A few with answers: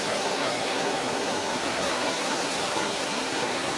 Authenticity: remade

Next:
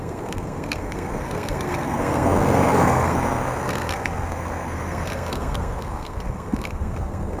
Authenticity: remade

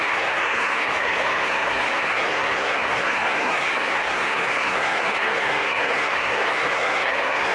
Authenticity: remade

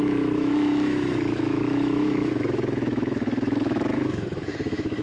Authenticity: remade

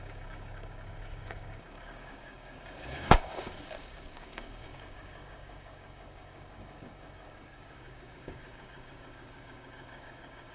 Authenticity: remade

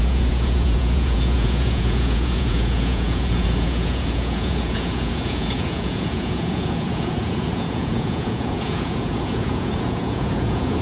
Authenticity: remade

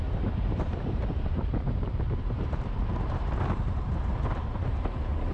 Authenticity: remade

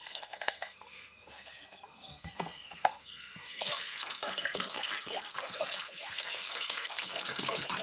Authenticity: remade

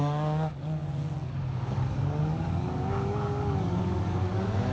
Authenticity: remade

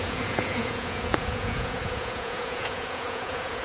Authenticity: remade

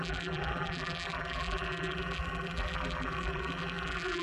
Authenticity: remade